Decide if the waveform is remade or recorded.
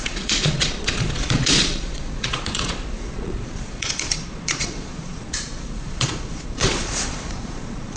remade